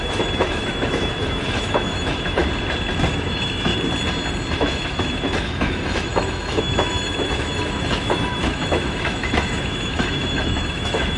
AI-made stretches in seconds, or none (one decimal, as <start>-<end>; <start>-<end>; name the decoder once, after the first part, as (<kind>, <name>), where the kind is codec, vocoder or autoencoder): 0.0-2.4 (autoencoder, DAC-VAE); 3.1-3.7; 4.5-11.2

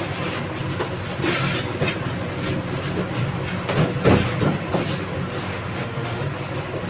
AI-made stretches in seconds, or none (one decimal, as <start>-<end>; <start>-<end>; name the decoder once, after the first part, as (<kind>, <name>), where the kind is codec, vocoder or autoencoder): 5.5-6.2 (autoencoder, DAC-VAE)

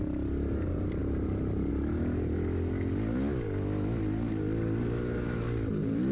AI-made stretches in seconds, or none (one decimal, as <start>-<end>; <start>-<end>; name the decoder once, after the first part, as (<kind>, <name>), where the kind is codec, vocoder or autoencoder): none

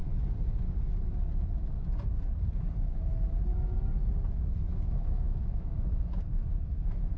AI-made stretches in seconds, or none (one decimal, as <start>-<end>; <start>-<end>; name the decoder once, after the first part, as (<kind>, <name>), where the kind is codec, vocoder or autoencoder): 4.3-7.2 (autoencoder, DAC-VAE)

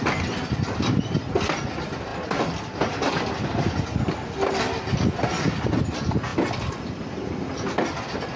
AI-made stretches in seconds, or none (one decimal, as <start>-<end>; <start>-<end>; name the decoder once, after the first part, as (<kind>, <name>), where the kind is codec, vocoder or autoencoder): none

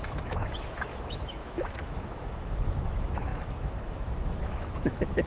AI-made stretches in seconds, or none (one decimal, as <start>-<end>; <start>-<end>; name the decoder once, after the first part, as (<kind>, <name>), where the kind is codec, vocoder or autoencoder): 0.0-5.3 (autoencoder, DAC-VAE)

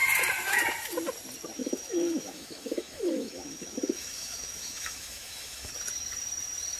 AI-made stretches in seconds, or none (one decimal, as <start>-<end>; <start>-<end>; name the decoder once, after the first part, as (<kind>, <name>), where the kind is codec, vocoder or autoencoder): 1.6-5.7 (autoencoder, DAC-VAE)